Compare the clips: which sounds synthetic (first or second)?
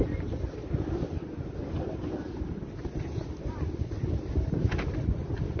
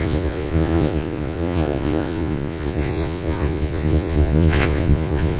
second